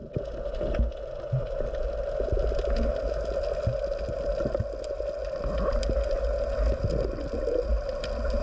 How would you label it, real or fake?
real